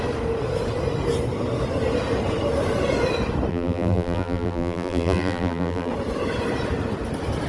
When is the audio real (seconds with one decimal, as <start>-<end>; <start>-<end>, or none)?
0.0-3.5; 5.9-7.5